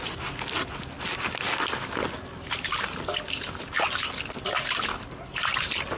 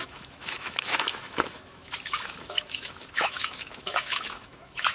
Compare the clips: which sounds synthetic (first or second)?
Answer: second